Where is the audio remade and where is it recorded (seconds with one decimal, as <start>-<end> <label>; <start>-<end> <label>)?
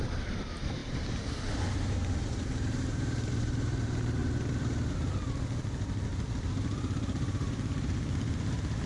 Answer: 0.0-4.2 remade; 4.2-6.5 recorded; 6.5-8.9 remade